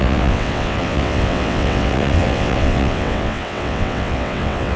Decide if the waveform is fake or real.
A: fake